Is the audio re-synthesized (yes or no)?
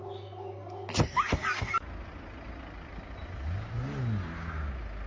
no